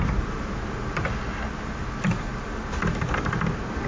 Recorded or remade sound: recorded